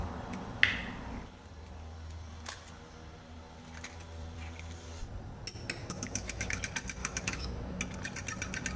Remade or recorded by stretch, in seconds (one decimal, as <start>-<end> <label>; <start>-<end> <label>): 0.0-5.8 recorded; 5.8-6.6 remade; 6.6-7.0 recorded; 7.0-7.8 remade; 7.8-8.8 recorded